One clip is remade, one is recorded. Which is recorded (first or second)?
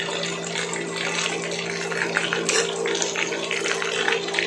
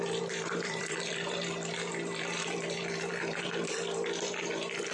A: first